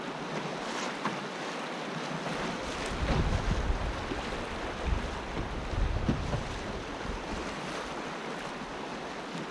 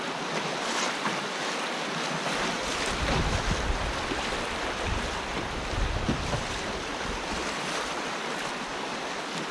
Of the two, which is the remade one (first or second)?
second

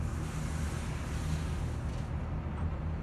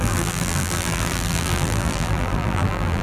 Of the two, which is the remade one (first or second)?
second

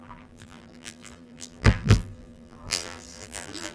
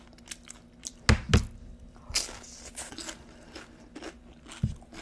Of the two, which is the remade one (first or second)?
first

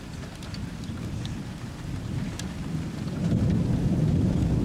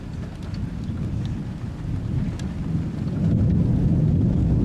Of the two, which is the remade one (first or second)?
first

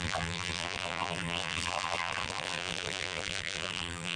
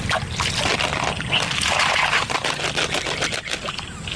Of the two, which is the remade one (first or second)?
first